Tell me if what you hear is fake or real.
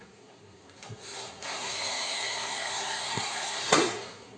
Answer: fake